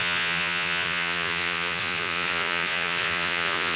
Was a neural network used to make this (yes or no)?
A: yes